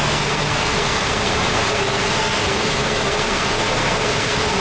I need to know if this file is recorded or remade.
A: remade